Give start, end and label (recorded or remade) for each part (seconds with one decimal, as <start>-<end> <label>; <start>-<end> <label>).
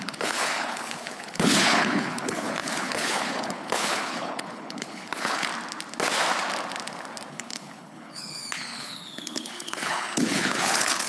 0.0-5.5 remade; 5.5-7.3 recorded; 7.3-11.1 remade